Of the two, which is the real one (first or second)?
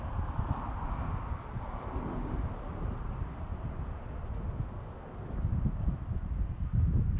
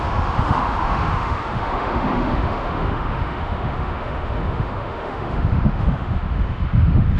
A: first